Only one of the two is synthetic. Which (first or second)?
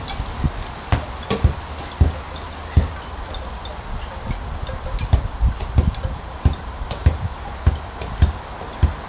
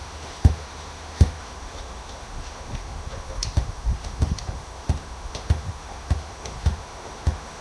second